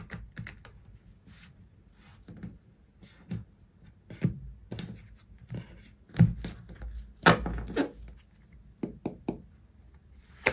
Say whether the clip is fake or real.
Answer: real